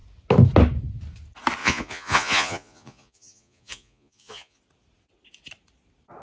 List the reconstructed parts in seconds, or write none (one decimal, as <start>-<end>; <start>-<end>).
1.6-4.6